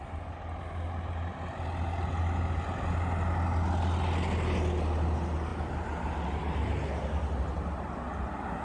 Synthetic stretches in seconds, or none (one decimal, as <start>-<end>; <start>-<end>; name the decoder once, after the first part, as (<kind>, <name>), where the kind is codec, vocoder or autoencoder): none